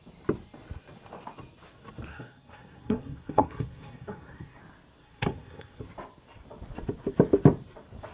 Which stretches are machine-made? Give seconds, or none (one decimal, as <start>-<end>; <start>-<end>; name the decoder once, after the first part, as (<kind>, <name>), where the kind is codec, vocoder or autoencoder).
2.1-4.6 (codec, SNAC); 5.0-5.8